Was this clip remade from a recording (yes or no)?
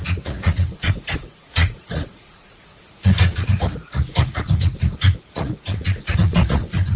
yes